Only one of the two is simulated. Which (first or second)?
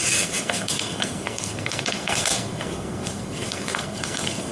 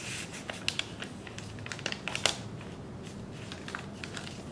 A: first